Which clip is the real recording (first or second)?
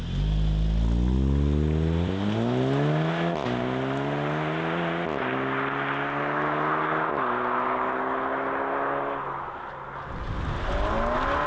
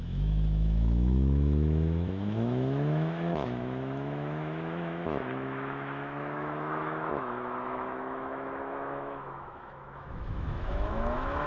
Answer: first